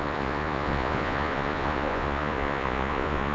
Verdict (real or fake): fake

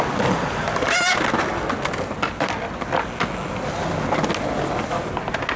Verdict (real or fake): real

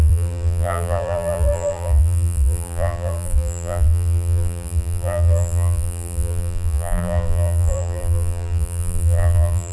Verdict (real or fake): fake